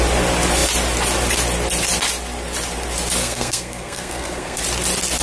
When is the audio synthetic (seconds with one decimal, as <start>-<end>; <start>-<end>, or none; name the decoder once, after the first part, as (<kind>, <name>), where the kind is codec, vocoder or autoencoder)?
3.2-4.6 (codec, SNAC)